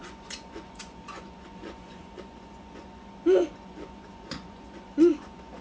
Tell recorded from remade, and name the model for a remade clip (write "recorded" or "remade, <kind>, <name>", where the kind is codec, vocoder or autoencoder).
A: remade, vocoder, Vocos